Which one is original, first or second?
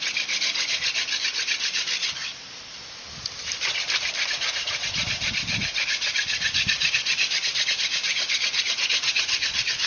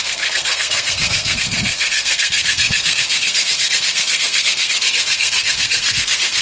first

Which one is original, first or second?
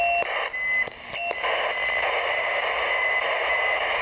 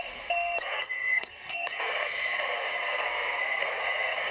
first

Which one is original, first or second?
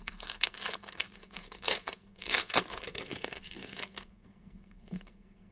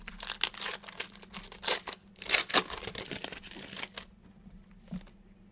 second